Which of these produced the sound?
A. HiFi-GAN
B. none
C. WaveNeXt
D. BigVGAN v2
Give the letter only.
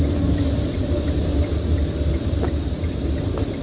B